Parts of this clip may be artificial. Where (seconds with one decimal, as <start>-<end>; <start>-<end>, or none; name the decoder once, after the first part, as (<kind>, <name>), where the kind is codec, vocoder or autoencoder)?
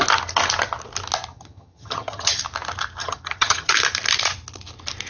1.3-2.4 (vocoder, HiFi-GAN); 3.0-3.7